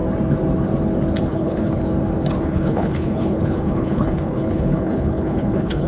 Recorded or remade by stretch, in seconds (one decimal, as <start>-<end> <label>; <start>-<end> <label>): 0.0-1.2 recorded; 1.2-1.8 remade; 1.8-2.4 recorded; 2.4-5.9 remade